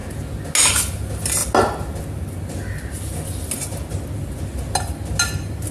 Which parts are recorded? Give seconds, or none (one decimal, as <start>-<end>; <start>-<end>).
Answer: 0.0-5.7